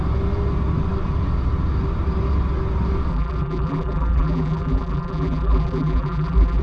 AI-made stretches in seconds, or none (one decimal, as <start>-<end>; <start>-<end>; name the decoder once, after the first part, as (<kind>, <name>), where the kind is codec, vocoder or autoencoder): 3.1-6.6 (vocoder, BigVGAN v2)

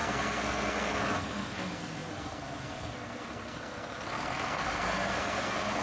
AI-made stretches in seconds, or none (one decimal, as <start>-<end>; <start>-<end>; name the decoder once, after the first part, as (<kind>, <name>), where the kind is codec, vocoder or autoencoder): 0.0-5.8 (codec, SNAC)

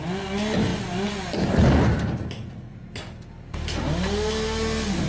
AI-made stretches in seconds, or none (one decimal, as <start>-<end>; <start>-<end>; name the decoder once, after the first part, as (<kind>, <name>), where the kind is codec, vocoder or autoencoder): none

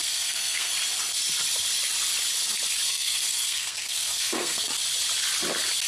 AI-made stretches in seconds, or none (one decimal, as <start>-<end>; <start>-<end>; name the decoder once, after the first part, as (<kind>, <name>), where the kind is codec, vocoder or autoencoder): 0.0-0.7 (codec, SNAC); 2.9-4.7

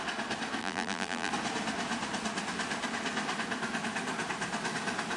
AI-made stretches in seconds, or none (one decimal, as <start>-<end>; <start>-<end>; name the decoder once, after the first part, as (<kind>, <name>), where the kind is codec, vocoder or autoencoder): 0.6-1.3 (vocoder, BigVGAN v2)

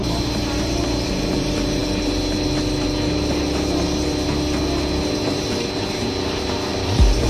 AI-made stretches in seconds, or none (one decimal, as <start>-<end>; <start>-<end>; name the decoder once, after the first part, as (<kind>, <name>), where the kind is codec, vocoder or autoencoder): 0.0-1.8 (vocoder, BigVGAN v2); 6.2-7.3

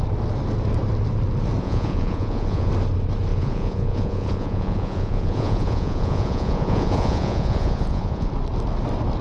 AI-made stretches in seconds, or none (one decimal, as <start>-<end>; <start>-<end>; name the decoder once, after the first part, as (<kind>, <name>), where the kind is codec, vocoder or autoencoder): 1.6-2.7 (vocoder, Vocos); 3.3-8.3

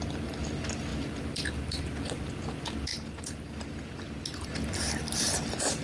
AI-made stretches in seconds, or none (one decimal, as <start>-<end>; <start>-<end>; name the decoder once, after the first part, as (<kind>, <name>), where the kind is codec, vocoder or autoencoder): none